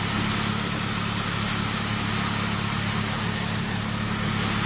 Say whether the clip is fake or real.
real